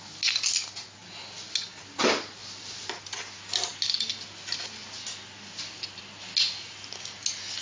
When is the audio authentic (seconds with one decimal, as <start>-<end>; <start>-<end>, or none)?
0.0-7.6